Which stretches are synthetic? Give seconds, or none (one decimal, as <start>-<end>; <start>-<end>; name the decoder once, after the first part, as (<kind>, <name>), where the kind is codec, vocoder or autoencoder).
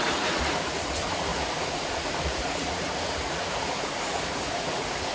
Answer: 0.0-5.1 (vocoder, Vocos)